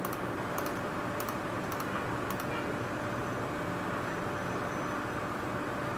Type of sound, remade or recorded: recorded